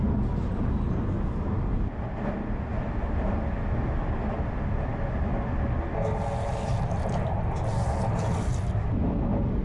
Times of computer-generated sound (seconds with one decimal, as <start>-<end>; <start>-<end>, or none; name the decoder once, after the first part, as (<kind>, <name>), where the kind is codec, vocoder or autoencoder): none